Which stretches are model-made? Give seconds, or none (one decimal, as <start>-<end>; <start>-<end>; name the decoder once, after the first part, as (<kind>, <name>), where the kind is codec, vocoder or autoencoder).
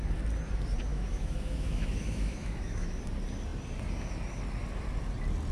0.9-3.0 (autoencoder, DAC-VAE)